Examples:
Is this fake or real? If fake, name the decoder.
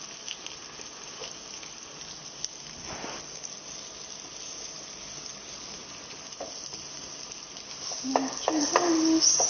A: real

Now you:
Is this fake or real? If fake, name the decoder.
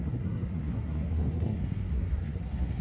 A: fake, codec, SNAC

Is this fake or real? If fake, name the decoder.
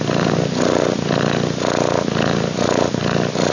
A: real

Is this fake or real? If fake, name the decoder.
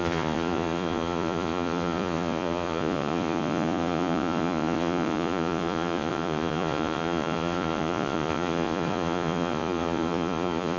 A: fake, vocoder, Vocos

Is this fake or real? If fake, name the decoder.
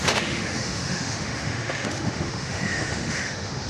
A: fake, autoencoder, DAC-VAE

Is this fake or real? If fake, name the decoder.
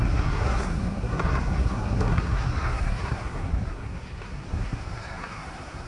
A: fake, codec, SNAC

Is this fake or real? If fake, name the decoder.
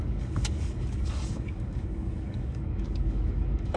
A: fake, codec, DAC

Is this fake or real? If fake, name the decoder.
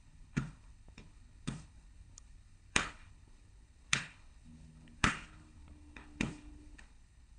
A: fake, codec, HILCodec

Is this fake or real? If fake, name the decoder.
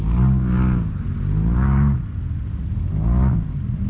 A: real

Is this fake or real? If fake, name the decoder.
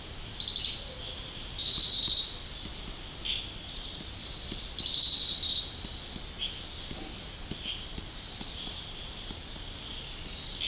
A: real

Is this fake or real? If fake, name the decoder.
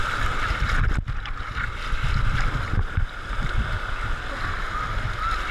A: real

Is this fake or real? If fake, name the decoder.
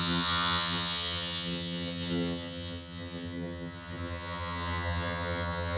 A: fake, vocoder, HiFi-GAN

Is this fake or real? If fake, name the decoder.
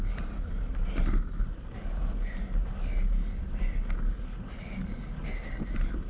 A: real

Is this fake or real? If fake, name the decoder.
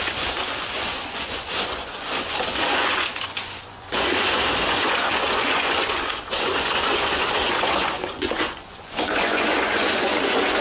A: fake, vocoder, Vocos